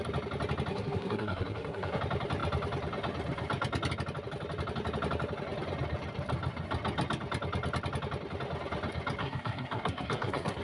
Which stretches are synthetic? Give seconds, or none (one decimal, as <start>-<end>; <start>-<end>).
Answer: 0.7-2.0; 9.2-10.6